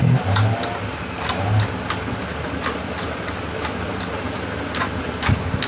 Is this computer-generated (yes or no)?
no